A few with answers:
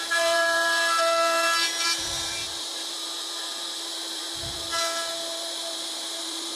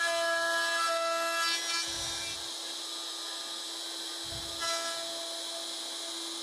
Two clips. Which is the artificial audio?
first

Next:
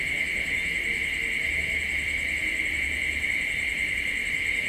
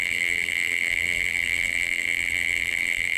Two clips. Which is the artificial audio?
second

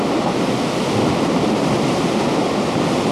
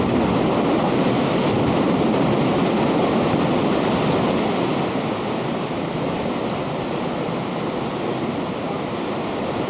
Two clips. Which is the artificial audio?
second